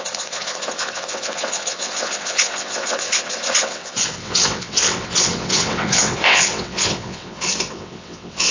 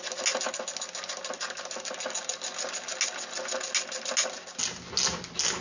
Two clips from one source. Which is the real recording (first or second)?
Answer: second